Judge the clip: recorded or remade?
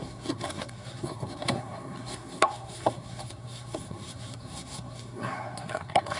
remade